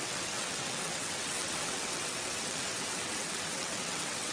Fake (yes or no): yes